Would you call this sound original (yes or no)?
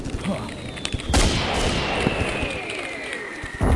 yes